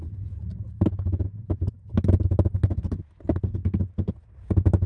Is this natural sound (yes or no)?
yes